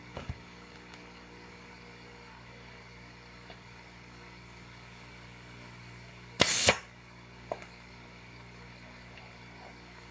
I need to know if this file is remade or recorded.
remade